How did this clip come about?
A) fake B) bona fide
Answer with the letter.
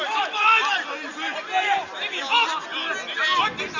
B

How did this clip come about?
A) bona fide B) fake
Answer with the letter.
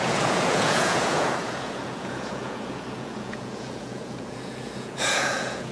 B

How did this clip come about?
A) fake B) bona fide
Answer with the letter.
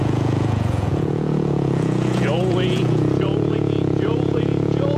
A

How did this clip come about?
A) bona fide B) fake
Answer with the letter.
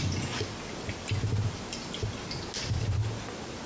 A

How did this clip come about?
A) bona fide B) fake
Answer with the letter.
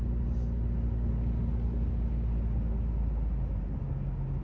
A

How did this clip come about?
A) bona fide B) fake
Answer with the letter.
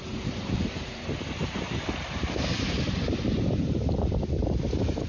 B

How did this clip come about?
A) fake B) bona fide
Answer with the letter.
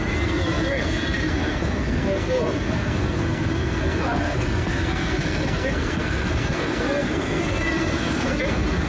A